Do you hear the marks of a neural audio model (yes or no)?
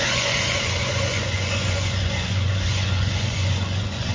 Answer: yes